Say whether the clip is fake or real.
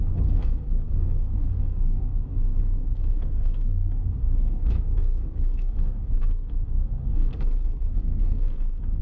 fake